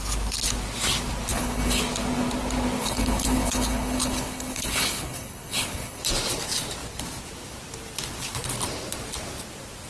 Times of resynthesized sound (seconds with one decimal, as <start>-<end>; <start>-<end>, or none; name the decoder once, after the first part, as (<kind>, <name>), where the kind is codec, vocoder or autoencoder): 1.3-1.8 (codec, HILCodec); 2.8-6.0